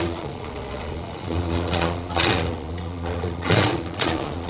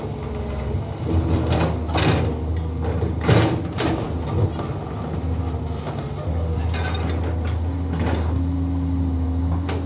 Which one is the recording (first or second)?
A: second